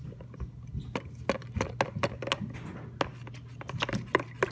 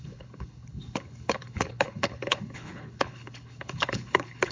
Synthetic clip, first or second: second